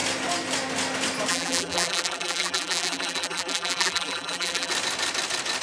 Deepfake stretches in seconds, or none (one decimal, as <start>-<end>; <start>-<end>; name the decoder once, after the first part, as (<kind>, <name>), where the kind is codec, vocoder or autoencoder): 1.3-4.7 (vocoder, BigVGAN v2)